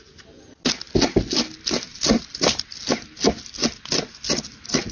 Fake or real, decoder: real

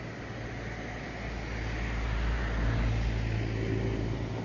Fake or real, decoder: real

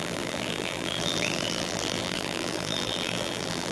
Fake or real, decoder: fake, vocoder, BigVGAN v2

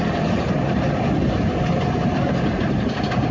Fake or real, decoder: real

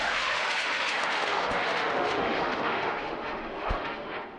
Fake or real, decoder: fake, autoencoder, DAC-VAE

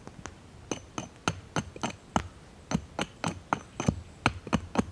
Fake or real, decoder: real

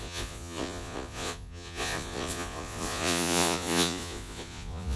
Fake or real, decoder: fake, vocoder, Vocos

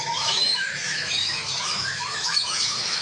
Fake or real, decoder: fake, autoencoder, DAC-VAE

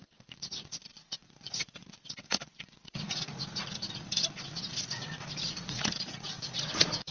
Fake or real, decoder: fake, vocoder, Vocos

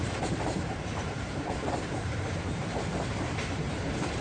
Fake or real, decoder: fake, vocoder, BigVGAN v2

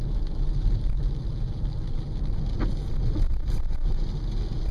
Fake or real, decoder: real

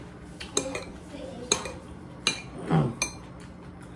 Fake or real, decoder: real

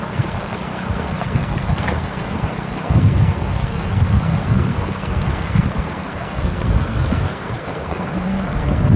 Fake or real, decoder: fake, codec, SNAC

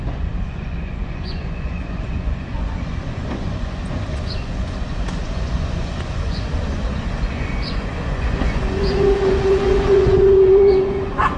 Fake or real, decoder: fake, vocoder, Vocos